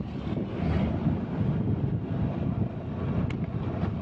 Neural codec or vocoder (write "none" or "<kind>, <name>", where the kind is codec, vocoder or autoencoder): vocoder, BigVGAN v2